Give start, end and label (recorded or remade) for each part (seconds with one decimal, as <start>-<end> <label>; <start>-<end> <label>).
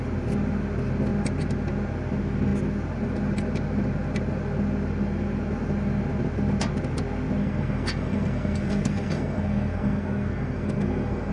0.0-7.4 recorded; 7.4-11.3 remade